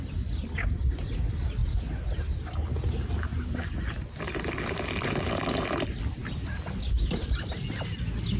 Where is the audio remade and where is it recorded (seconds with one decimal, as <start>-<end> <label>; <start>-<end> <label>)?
0.0-8.4 recorded